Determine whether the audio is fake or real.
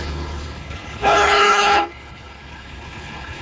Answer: fake